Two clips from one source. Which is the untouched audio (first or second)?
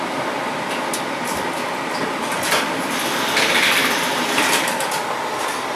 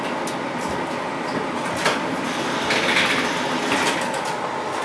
second